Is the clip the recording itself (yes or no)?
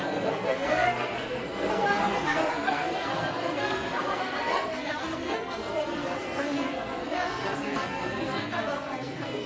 no